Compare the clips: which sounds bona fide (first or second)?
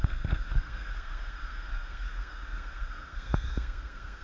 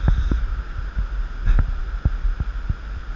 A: second